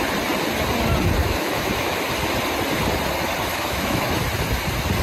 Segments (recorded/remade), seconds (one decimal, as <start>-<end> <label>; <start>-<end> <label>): 0.0-1.2 recorded; 1.2-2.0 remade; 2.0-3.5 recorded; 3.5-4.1 remade; 4.1-5.0 recorded